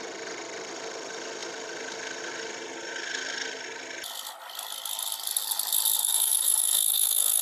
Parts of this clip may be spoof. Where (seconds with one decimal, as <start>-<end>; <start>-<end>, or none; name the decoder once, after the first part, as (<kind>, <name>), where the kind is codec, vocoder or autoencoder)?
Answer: 6.0-7.4 (codec, SNAC)